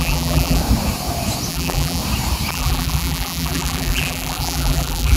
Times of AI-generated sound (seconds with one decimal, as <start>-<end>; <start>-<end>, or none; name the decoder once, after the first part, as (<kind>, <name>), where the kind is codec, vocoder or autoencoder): 0.0-0.6 (vocoder, BigVGAN v2); 1.5-2.0; 2.5-5.2